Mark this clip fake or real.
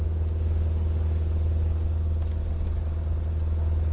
real